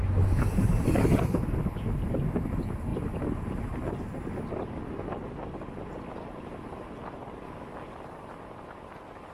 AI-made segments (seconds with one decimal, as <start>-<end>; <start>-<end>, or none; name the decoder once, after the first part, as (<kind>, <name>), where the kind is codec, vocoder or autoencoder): none

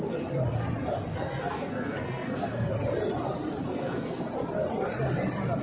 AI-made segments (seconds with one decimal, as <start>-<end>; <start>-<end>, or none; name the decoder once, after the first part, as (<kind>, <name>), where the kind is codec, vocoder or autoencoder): 1.1-2.7 (codec, SNAC); 3.7-4.3

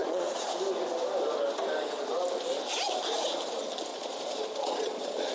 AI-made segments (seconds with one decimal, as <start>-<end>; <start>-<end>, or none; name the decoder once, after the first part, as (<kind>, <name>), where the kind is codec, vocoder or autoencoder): 0.0-0.5 (vocoder, Vocos); 3.9-5.3

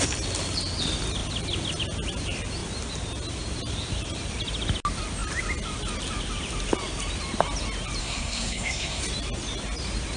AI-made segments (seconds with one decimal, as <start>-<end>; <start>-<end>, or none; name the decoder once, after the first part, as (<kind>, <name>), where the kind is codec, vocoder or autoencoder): 8.0-9.0 (codec, SNAC)

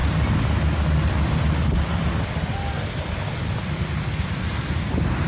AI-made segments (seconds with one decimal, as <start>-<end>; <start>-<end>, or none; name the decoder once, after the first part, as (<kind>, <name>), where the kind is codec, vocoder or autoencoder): none

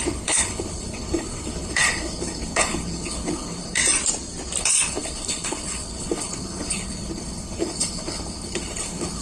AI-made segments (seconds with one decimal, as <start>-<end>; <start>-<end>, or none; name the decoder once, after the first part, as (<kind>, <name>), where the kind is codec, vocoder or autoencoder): 0.0-3.8 (codec, HILCodec); 4.6-9.2